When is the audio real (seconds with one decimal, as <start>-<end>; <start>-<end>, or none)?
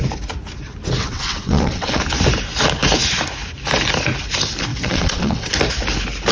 0.0-1.0; 2.0-4.7; 5.5-6.3